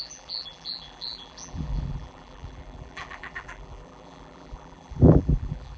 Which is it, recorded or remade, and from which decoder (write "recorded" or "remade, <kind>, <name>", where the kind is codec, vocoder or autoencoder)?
remade, vocoder, BigVGAN v2